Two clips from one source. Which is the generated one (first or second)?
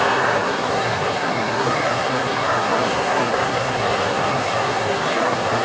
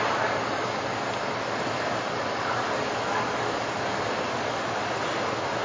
first